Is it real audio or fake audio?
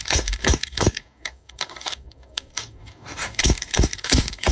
fake